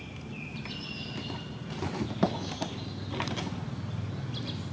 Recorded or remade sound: recorded